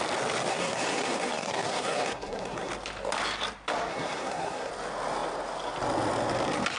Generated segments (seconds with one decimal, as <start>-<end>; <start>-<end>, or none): 0.5-2.7; 3.9-4.7